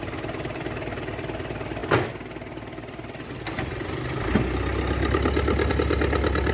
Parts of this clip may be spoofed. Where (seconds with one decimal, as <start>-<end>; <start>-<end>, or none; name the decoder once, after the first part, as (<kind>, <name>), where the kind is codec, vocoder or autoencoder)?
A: none